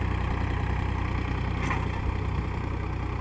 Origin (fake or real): real